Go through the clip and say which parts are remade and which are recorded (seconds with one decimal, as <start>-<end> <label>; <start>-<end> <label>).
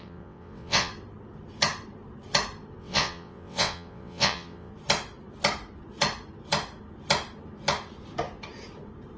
0.0-0.9 remade; 0.9-2.8 recorded; 2.8-4.7 remade; 4.7-9.2 recorded